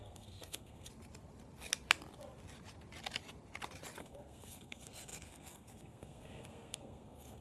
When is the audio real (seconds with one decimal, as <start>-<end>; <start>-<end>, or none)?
0.9-4.0